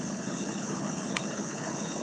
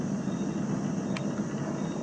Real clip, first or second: second